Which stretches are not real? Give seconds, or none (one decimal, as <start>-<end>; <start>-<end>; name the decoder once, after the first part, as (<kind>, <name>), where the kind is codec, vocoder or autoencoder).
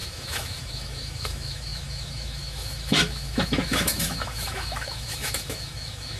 0.0-6.2 (autoencoder, DAC-VAE)